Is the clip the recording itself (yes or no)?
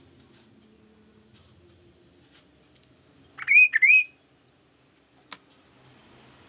yes